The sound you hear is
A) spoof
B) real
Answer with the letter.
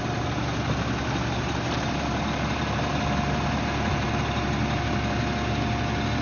B